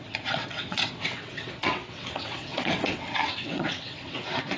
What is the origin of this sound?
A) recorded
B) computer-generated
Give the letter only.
B